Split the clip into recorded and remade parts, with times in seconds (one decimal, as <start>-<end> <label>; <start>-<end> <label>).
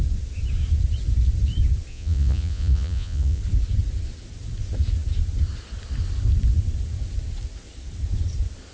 0.0-1.9 recorded; 1.9-3.4 remade; 3.4-8.7 recorded